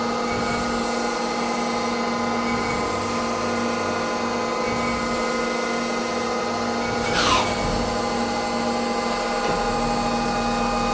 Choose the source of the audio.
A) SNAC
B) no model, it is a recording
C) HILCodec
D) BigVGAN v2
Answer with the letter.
B